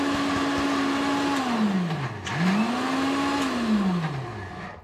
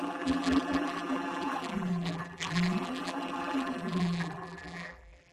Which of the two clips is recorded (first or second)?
first